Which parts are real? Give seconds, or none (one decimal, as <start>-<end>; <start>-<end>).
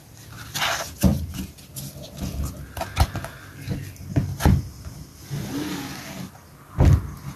0.0-7.4